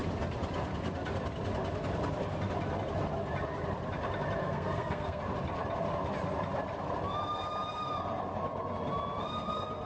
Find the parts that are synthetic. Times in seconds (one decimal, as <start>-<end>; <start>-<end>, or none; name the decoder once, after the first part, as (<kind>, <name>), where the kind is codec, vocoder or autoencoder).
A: 4.4-5.2 (codec, SNAC)